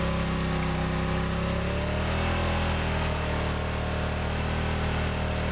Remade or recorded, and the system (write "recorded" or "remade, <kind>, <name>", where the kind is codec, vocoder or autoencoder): recorded